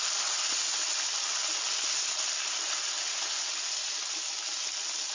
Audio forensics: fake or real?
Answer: real